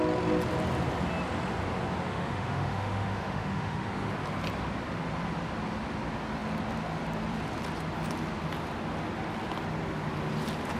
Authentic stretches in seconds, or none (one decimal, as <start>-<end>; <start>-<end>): 0.0-2.1; 4.1-10.8